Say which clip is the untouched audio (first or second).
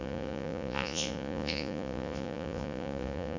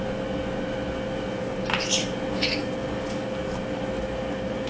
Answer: second